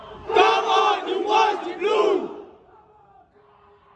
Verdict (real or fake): real